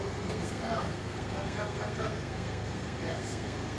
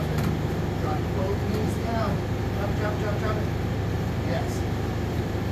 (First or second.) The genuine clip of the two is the second